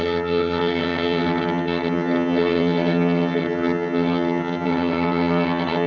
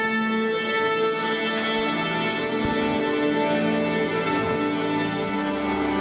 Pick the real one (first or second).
second